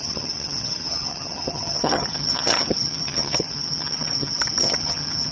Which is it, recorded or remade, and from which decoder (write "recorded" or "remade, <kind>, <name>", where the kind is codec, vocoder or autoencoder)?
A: remade, vocoder, HiFi-GAN